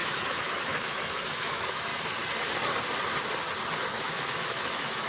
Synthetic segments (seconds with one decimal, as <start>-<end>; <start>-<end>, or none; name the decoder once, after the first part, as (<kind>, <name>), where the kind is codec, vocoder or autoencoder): 0.0-1.9 (autoencoder, DAC-VAE); 3.9-5.1

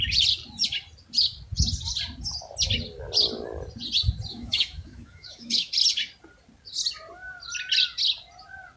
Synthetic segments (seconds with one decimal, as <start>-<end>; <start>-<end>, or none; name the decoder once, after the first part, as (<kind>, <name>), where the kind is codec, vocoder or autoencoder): 4.3-5.7 (autoencoder, DAC-VAE)